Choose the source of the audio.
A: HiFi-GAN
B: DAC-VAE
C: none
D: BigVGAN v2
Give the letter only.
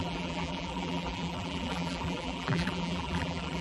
D